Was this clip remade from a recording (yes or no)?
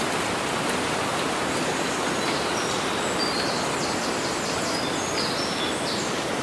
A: no